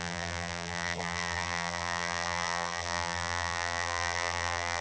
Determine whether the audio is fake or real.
fake